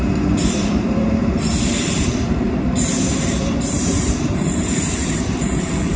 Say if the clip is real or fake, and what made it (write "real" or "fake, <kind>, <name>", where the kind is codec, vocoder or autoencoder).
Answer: fake, vocoder, BigVGAN v2